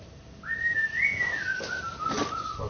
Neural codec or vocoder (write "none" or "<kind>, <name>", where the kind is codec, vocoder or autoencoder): none